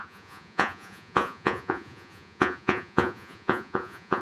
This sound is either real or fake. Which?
fake